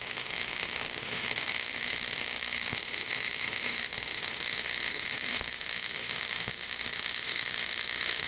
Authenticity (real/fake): fake